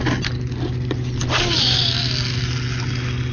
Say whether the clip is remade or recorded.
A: recorded